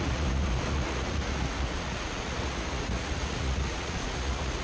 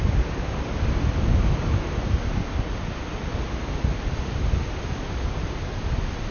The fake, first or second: first